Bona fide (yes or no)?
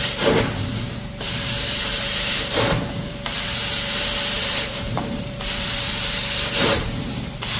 no